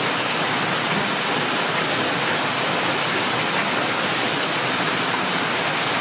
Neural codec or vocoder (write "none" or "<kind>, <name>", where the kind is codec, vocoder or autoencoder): none